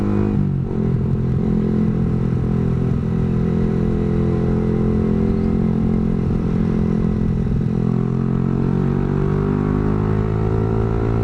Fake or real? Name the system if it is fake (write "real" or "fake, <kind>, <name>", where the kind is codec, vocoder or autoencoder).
real